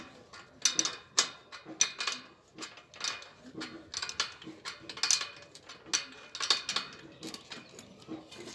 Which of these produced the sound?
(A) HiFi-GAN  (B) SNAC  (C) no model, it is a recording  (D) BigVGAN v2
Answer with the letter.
C